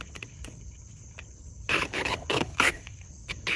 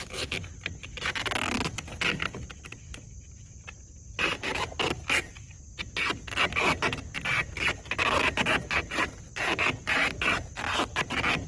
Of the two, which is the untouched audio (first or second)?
second